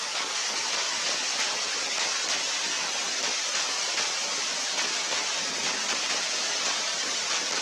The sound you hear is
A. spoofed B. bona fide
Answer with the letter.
B